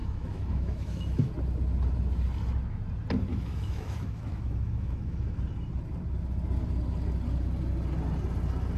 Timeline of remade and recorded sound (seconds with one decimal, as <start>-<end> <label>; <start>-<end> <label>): 0.0-1.3 remade; 1.3-3.3 recorded; 3.3-5.4 remade; 5.4-8.8 recorded